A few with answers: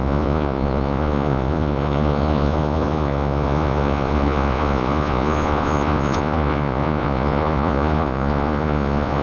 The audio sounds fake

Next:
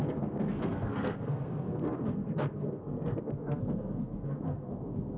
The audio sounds fake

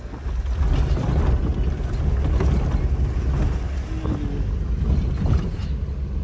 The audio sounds real